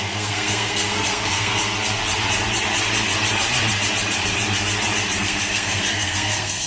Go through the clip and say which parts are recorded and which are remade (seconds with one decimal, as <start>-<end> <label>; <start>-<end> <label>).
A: 0.0-1.6 remade; 1.6-5.2 recorded; 5.2-6.7 remade